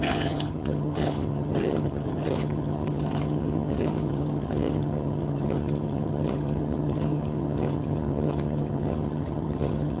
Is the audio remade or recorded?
remade